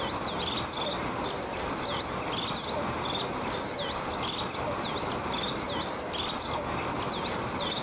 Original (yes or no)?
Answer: yes